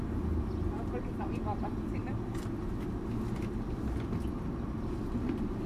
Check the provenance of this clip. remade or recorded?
recorded